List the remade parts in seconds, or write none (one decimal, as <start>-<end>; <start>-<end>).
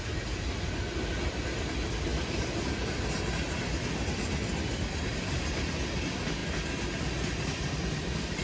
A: none